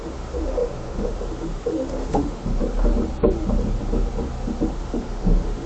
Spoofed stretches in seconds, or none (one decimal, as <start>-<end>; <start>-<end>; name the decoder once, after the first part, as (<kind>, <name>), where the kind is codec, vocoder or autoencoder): 0.0-2.6 (autoencoder, DAC-VAE); 4.7-5.7